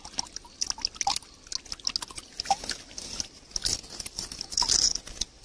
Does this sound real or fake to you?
real